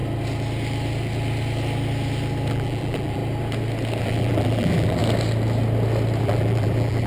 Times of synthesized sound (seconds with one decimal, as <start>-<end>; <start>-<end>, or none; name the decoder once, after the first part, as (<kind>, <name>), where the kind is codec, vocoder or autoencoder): 2.5-3.2 (vocoder, BigVGAN v2); 4.0-5.0; 6.2-7.1

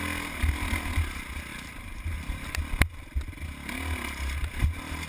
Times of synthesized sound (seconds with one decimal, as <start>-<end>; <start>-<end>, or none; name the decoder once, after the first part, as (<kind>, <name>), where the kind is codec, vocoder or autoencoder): 1.5-2.6 (vocoder, BigVGAN v2)

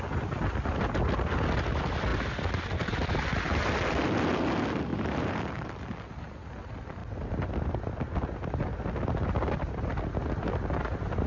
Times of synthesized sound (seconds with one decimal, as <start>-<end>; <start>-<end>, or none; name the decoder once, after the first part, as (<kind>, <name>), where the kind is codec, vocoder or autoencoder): 4.9-5.7 (vocoder, BigVGAN v2)

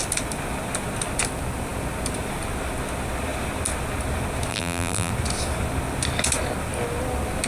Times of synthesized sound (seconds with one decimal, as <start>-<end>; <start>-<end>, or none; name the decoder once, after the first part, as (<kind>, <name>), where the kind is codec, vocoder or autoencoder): 4.5-5.1 (vocoder, BigVGAN v2)

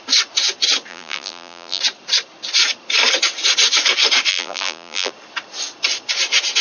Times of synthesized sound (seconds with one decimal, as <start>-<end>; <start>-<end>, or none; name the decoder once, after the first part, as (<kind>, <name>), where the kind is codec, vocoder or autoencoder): 0.9-1.8 (vocoder, BigVGAN v2); 4.3-5.1

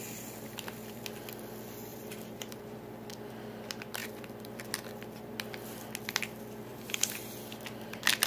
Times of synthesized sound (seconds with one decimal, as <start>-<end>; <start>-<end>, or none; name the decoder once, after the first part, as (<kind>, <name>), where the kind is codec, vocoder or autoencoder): 1.9-2.6 (vocoder, BigVGAN v2); 6.7-7.3

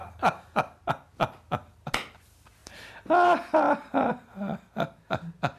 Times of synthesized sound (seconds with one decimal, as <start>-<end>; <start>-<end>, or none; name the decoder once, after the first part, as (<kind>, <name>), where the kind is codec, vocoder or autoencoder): 0.0-0.9 (vocoder, BigVGAN v2); 2.6-4.1

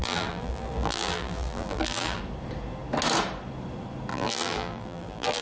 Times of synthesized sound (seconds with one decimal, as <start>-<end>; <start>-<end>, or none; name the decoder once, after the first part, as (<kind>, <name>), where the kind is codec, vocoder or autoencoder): 0.0-2.2 (vocoder, BigVGAN v2); 4.1-5.4